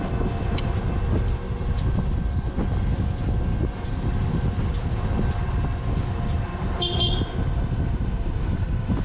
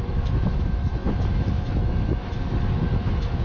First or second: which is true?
first